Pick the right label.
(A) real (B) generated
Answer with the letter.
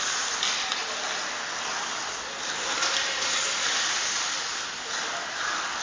A